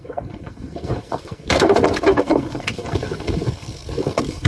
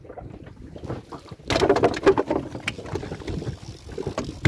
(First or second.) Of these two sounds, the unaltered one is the second